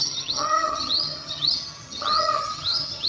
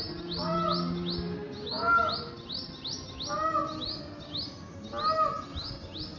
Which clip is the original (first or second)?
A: second